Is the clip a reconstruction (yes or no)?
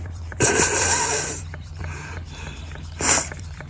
yes